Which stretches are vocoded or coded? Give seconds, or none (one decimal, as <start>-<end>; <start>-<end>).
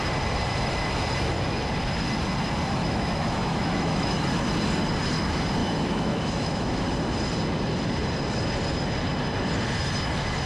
2.8-4.3; 5.6-6.8